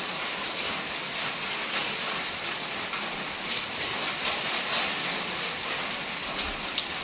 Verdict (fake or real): real